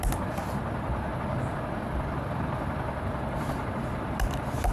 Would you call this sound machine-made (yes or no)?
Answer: no